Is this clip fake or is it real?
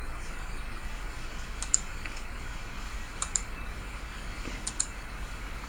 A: fake